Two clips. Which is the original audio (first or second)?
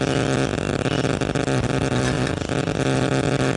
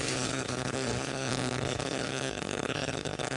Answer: first